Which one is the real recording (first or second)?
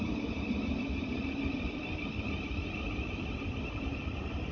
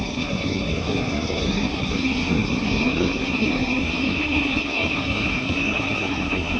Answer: first